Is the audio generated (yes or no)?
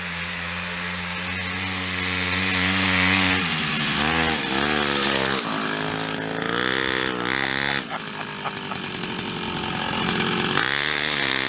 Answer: no